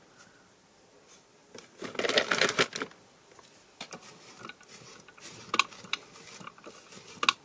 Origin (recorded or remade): recorded